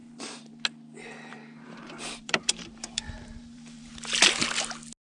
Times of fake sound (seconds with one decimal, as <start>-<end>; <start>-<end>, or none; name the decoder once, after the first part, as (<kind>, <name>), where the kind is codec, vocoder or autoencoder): 0.0-0.5 (vocoder, BigVGAN v2); 1.3-3.9